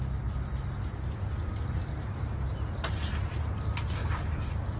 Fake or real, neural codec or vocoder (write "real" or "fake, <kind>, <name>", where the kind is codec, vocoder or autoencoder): real